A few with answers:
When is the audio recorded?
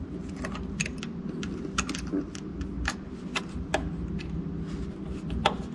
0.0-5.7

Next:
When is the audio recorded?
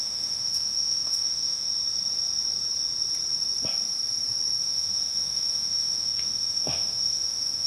1.7-4.6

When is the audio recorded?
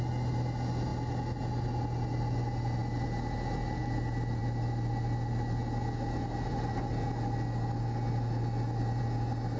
0.0-9.6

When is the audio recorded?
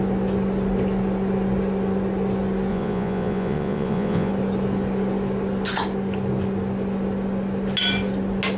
0.0-2.7; 4.3-8.6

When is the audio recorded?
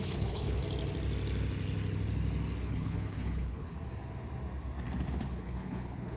0.6-2.6; 3.7-5.2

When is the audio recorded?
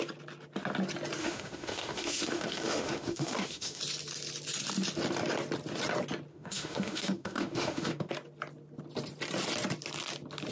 0.0-1.2; 3.8-6.3; 8.1-10.5